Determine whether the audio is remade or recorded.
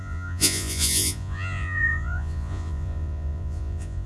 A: remade